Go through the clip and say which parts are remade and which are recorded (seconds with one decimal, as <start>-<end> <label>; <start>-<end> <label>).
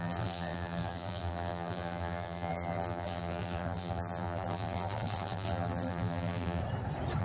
0.0-6.6 remade; 6.6-7.2 recorded